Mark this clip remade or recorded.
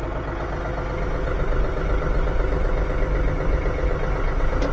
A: recorded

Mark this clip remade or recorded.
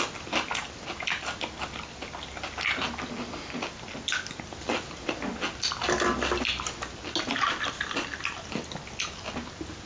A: recorded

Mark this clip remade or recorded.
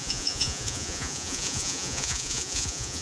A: remade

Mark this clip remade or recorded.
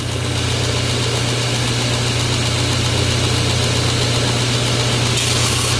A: recorded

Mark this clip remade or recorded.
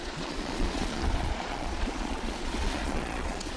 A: remade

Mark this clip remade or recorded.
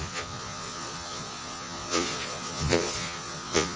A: remade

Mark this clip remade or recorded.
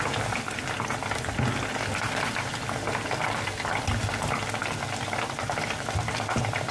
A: recorded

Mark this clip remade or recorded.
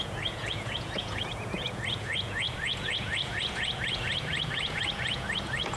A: remade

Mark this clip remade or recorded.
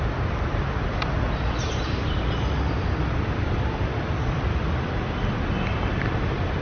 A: recorded